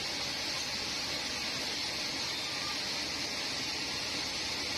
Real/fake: real